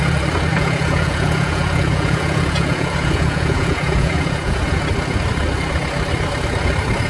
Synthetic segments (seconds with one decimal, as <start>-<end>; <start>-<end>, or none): 0.5-4.8